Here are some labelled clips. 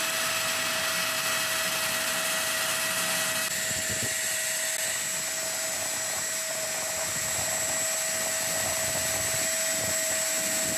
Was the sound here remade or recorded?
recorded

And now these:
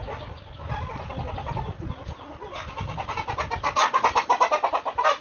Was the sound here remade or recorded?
recorded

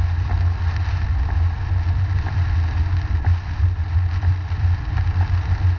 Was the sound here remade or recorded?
recorded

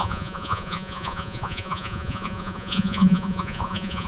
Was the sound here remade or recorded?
remade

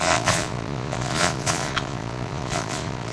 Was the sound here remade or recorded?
remade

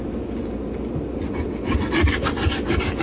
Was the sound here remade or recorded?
recorded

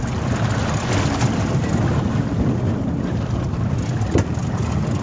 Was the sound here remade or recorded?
recorded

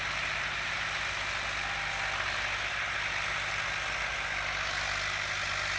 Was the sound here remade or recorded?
recorded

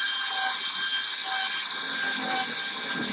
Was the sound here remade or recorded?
recorded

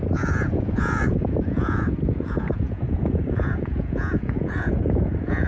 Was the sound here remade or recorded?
remade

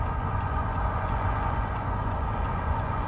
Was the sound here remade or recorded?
remade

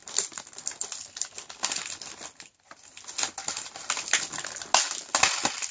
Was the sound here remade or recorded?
recorded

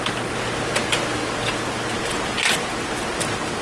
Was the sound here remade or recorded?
recorded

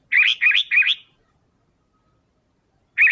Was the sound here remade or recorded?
recorded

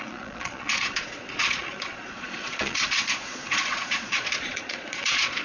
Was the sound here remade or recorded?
remade